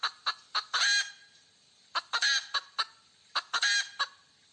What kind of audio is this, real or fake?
real